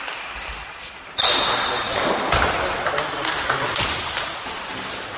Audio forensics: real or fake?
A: real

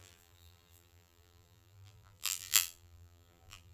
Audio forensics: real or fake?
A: fake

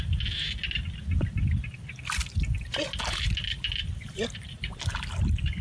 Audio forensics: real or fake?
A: real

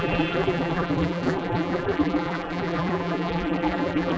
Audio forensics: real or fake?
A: fake